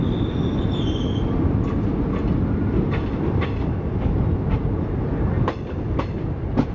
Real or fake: real